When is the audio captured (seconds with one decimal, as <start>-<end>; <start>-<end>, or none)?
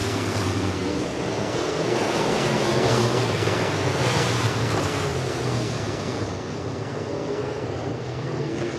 none